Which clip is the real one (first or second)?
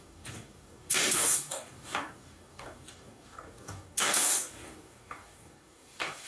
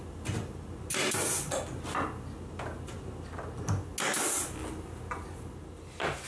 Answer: second